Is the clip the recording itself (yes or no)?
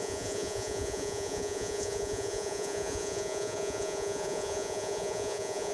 no